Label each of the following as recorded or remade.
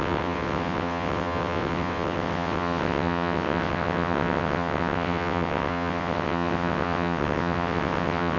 remade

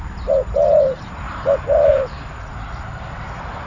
remade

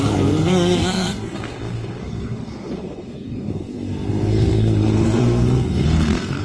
remade